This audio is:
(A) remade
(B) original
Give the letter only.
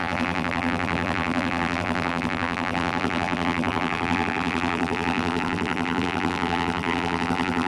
A